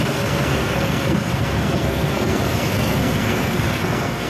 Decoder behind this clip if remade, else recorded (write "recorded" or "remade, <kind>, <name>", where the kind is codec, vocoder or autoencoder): remade, codec, SNAC